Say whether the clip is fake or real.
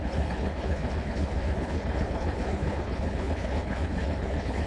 fake